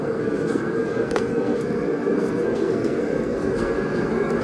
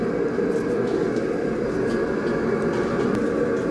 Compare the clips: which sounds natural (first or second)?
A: second